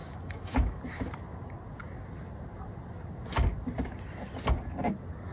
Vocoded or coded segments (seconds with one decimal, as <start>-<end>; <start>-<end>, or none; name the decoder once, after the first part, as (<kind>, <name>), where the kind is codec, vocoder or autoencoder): 0.0-0.8 (autoencoder, DAC-VAE)